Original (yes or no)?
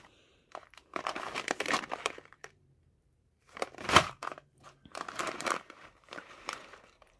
no